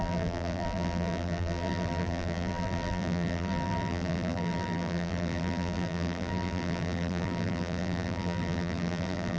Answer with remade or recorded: remade